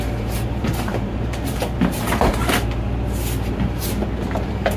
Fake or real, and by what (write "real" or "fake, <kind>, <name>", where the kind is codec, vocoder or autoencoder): fake, vocoder, BigVGAN v2